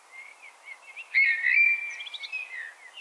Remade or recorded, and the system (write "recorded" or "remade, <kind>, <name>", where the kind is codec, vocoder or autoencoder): recorded